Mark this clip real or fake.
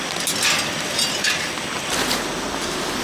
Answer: real